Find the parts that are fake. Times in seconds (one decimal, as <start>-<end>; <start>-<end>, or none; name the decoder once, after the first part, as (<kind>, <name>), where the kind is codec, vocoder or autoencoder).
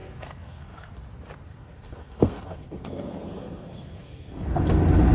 0.0-0.9 (codec, SNAC); 1.5-4.6